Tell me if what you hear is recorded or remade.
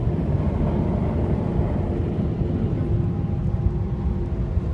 recorded